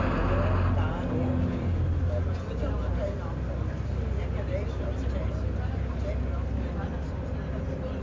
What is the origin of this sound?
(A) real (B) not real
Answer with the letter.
A